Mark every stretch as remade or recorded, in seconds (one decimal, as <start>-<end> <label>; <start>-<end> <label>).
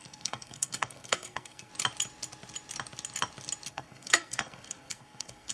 0.0-1.7 remade; 1.7-3.7 recorded; 3.7-5.5 remade